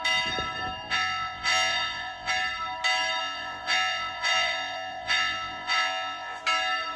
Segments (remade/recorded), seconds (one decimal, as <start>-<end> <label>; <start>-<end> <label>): 0.0-0.9 recorded; 0.9-2.3 remade; 2.3-3.2 recorded; 3.2-6.4 remade; 6.4-7.0 recorded